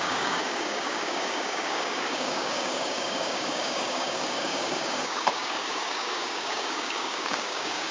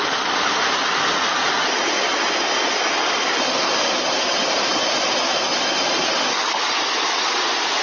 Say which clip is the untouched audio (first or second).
second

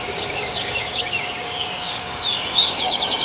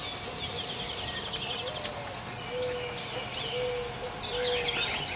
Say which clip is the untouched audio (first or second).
second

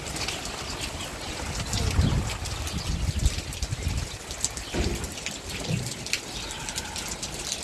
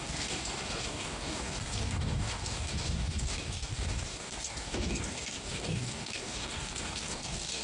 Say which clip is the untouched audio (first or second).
first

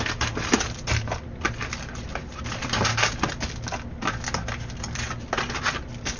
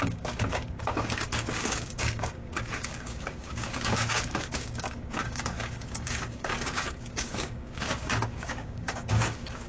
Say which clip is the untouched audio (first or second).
first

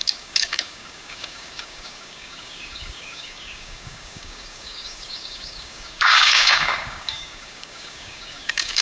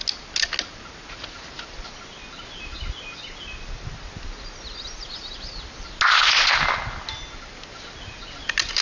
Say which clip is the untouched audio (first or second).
second